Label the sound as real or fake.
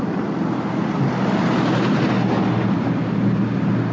real